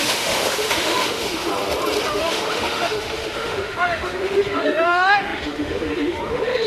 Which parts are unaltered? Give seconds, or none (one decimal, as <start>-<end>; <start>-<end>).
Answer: 1.5-2.1